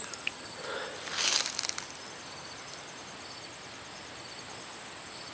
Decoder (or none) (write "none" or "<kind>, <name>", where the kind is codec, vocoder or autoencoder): none